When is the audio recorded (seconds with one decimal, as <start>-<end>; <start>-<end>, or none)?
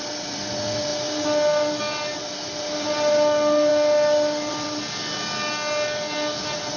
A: 0.0-6.8